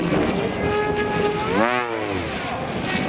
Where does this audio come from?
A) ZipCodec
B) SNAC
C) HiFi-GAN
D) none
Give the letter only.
D